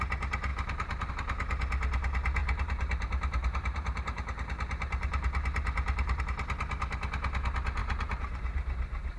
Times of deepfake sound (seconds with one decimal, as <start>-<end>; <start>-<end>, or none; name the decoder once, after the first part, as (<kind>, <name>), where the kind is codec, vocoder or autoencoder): 0.5-1.1 (vocoder, BigVGAN v2); 2.4-6.2; 7.8-9.2